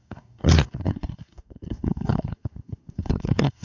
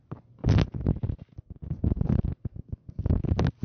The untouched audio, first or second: second